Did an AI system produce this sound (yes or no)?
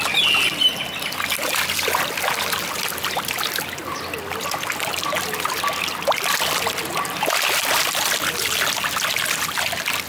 no